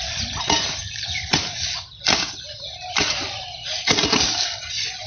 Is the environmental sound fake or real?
real